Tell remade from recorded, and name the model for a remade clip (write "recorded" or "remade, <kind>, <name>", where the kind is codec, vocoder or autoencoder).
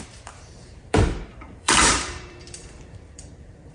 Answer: remade, vocoder, BigVGAN v2